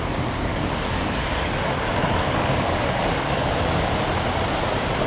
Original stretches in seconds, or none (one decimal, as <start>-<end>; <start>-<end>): 0.0-0.5; 3.6-5.1